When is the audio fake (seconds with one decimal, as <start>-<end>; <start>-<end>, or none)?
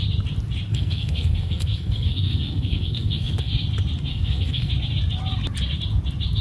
0.7-3.5; 4.1-4.7